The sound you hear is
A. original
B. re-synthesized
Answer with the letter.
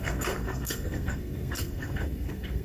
B